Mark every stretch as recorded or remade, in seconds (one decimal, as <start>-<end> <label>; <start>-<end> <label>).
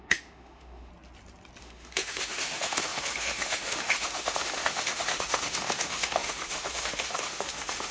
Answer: 0.0-0.9 remade; 0.9-1.6 recorded; 1.6-7.9 remade